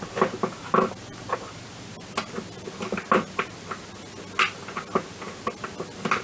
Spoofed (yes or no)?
no